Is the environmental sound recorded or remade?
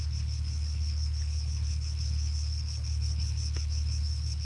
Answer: remade